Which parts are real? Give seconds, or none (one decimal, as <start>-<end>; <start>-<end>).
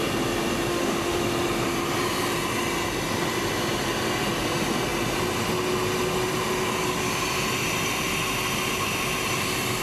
0.0-0.7; 1.2-9.8